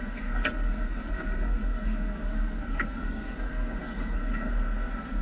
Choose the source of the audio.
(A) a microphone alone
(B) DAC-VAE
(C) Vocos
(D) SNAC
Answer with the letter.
D